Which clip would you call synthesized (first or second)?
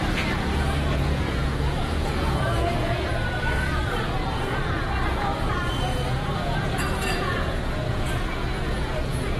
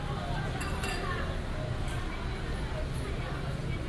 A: first